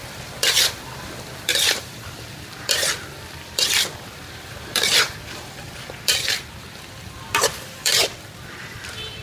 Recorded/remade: remade